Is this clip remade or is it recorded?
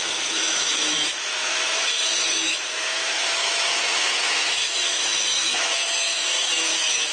remade